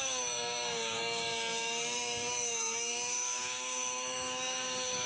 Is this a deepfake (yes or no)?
yes